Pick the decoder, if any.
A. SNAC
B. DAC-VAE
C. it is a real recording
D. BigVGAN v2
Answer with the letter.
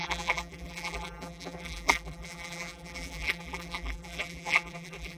D